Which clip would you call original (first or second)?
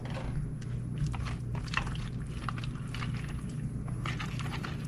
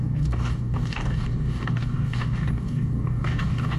first